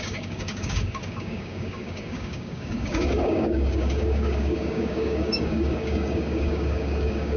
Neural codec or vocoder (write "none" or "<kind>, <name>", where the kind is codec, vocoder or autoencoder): codec, DAC